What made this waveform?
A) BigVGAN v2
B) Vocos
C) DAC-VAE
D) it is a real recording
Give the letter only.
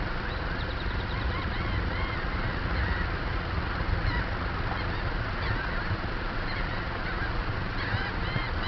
B